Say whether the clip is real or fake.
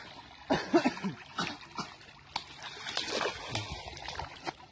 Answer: real